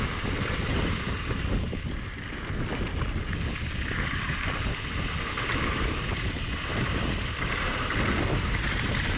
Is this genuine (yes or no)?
yes